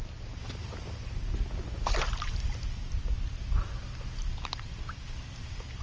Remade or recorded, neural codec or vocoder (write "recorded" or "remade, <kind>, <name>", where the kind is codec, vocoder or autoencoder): recorded